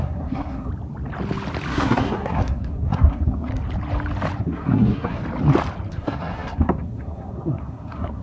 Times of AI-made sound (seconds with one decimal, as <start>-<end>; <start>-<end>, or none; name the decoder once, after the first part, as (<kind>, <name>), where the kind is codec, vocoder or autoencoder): 0.0-0.7 (codec, SNAC); 1.7-3.5; 4.4-5.2; 5.9-8.2